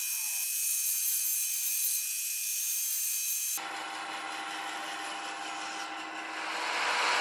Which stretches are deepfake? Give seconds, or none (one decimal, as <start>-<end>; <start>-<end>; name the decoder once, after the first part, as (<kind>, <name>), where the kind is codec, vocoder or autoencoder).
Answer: none

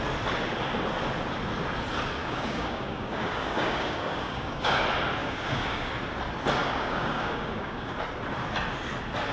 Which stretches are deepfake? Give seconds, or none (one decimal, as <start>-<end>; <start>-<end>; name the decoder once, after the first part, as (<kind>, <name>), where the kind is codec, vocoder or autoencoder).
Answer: 2.2-4.8 (codec, DAC); 5.2-5.9; 6.6-7.9

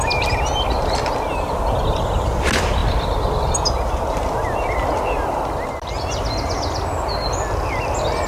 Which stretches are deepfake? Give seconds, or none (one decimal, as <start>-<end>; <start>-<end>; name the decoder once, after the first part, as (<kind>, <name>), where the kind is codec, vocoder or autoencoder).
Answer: none

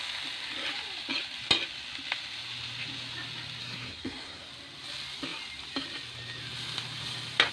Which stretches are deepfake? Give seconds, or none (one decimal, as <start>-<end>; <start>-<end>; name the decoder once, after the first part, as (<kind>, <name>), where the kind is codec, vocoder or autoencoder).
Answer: 3.6-4.5 (codec, SNAC)

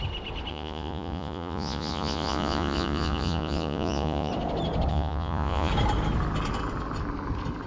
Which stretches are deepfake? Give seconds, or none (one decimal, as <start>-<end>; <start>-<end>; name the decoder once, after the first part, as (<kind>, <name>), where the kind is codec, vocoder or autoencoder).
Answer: 0.5-4.3 (vocoder, Vocos); 4.9-5.7